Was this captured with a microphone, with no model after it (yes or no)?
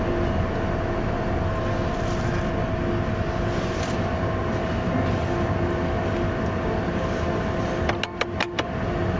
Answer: yes